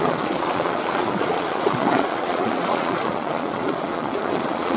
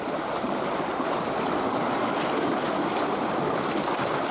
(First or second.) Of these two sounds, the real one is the second